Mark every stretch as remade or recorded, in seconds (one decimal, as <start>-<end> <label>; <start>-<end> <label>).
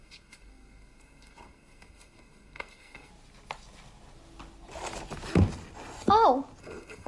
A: 0.0-3.1 remade; 3.1-6.6 recorded; 6.6-7.1 remade